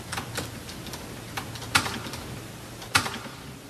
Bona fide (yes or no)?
yes